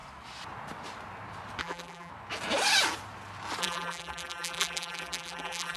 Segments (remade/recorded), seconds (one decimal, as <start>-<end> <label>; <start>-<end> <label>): 0.0-1.6 recorded; 1.6-2.1 remade; 2.1-3.6 recorded; 3.6-5.8 remade